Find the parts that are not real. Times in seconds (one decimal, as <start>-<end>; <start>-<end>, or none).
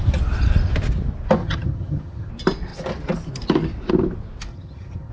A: 1.4-2.3; 4.5-5.1